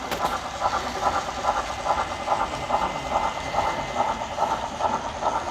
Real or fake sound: real